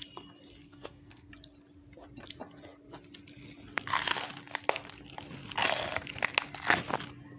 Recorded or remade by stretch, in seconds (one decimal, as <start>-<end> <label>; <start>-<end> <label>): 0.0-0.6 recorded; 0.6-1.3 remade; 1.3-7.4 recorded